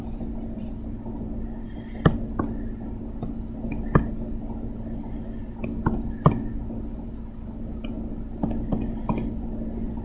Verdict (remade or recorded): recorded